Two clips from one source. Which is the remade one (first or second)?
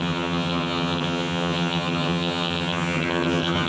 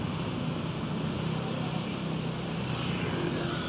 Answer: first